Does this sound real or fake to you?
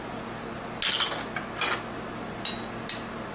real